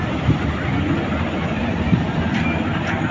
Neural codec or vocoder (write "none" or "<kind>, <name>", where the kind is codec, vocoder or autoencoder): none